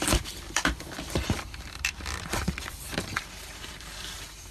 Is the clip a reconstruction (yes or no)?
yes